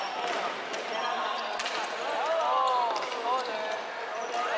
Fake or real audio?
real